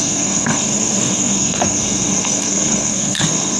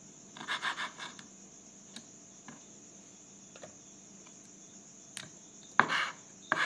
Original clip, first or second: second